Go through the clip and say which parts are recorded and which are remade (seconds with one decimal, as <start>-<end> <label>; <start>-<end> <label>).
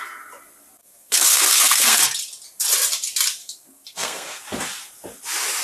0.0-0.8 recorded; 0.8-2.0 remade; 2.0-3.4 recorded; 3.4-4.4 remade; 4.4-5.6 recorded